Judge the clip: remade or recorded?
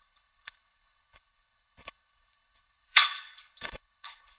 remade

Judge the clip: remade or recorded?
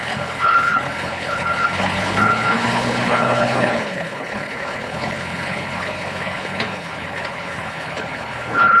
remade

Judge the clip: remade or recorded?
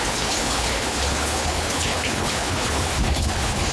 remade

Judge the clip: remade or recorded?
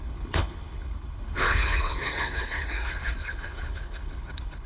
remade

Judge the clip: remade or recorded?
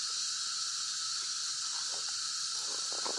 recorded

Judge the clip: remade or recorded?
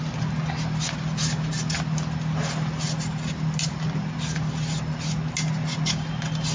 recorded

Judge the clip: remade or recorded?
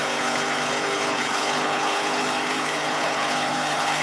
remade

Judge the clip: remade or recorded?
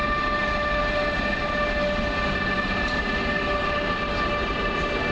recorded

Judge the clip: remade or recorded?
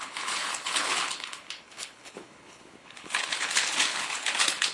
remade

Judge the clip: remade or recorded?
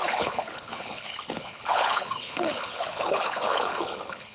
remade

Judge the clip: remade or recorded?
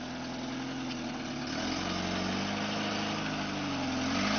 recorded